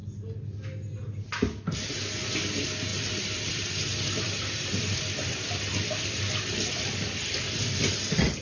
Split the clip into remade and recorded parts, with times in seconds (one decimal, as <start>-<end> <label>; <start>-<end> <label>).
0.0-2.9 recorded; 2.9-7.9 remade; 7.9-8.4 recorded